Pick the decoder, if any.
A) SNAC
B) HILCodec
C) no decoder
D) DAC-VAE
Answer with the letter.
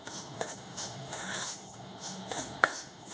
D